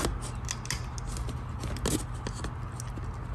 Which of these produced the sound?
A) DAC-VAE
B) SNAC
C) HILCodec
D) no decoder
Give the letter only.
D